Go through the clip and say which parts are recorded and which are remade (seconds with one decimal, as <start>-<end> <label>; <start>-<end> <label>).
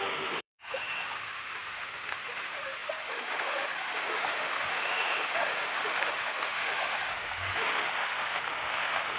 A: 0.0-9.2 remade